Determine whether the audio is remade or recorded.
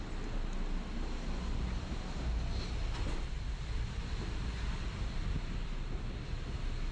recorded